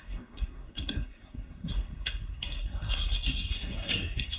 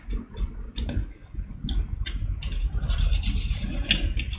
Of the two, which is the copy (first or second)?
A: first